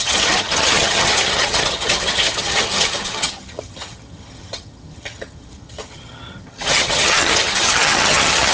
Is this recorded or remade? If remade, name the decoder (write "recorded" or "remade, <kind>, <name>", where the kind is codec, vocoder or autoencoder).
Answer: remade, vocoder, HiFi-GAN